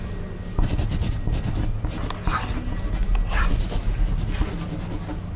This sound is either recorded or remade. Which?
recorded